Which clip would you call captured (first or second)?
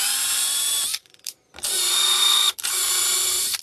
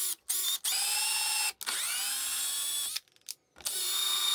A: second